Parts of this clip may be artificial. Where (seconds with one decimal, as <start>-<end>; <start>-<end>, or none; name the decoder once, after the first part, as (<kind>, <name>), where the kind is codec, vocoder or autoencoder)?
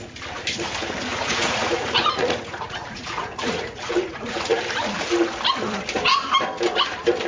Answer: 1.1-4.6 (vocoder, Vocos)